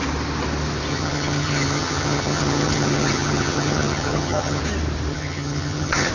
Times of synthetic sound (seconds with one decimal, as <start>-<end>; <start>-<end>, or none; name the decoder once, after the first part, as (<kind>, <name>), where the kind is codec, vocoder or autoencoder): 0.9-4.6 (vocoder, HiFi-GAN); 5.1-6.1